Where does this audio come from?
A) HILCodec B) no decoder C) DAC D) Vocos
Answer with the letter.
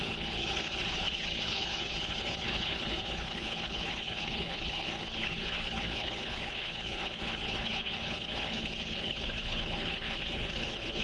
A